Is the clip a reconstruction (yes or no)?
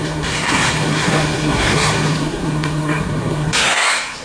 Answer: yes